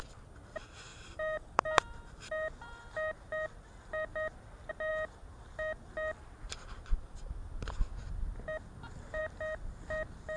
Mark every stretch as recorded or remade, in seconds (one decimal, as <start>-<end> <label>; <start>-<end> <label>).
0.0-0.9 recorded; 0.9-2.8 remade; 2.8-10.4 recorded